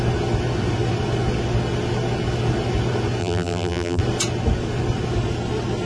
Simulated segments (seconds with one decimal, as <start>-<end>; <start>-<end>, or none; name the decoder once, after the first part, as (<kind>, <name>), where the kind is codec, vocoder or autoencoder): 3.2-4.0 (vocoder, BigVGAN v2)